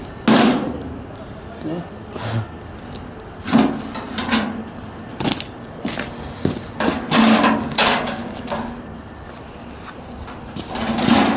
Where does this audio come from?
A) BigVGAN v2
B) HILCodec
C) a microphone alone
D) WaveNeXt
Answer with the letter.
C